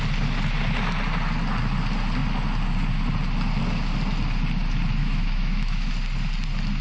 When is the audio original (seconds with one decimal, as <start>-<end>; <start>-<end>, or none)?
0.0-5.0; 5.9-6.8

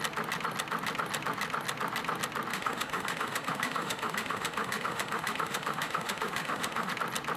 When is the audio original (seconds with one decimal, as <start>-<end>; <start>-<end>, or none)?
0.0-2.5; 6.9-7.4

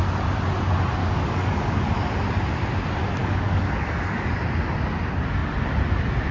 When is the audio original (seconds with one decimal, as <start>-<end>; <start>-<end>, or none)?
0.0-1.0; 1.9-3.2; 4.4-6.3

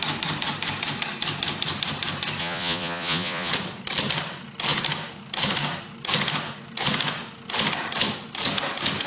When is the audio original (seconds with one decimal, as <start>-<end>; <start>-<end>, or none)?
0.0-2.4; 3.5-9.1

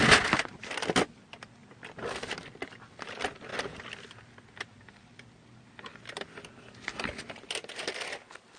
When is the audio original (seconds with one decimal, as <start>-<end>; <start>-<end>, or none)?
0.0-8.6

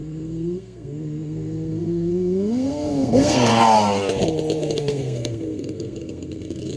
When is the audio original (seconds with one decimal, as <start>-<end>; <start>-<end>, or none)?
3.5-4.6